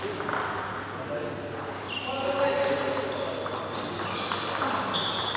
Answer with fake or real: real